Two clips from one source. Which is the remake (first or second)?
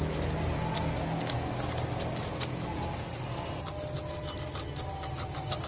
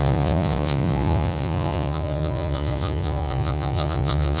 second